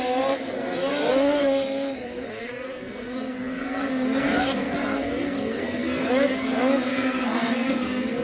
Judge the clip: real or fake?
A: fake